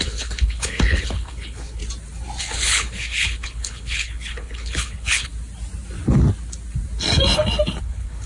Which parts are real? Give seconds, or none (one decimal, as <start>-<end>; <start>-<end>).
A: 1.8-2.4; 5.3-7.8